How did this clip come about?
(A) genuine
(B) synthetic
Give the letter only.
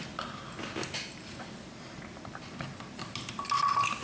A